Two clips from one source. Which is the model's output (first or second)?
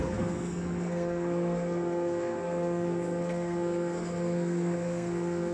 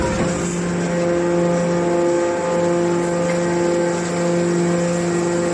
first